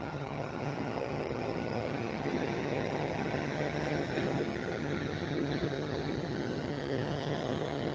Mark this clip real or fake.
fake